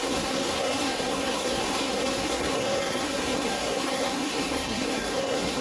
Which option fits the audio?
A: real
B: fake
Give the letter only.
B